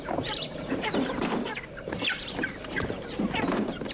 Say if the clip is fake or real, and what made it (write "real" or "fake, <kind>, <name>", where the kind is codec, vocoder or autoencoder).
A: fake, vocoder, BigVGAN v2